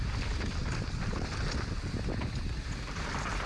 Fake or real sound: real